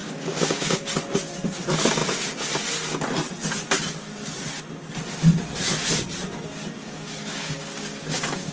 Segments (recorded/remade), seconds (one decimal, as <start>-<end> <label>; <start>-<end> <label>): 0.0-0.9 remade; 0.9-6.8 recorded; 6.8-8.5 remade